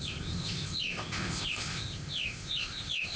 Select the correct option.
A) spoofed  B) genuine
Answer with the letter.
A